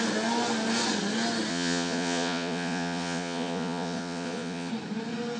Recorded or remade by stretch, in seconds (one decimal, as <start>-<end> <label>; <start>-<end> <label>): 0.0-1.5 recorded; 1.5-4.7 remade; 4.7-5.4 recorded